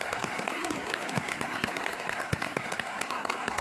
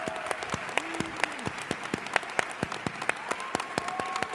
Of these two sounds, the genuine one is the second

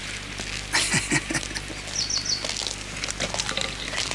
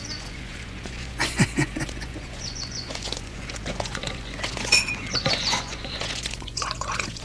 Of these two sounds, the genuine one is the first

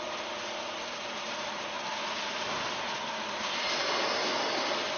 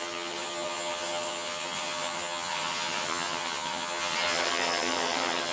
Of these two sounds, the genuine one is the first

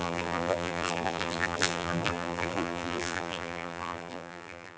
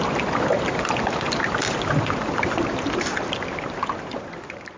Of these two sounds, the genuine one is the second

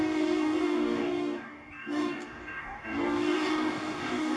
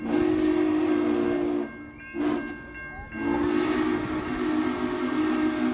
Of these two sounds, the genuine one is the second